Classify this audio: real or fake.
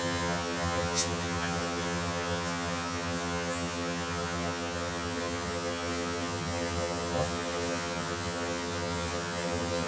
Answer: fake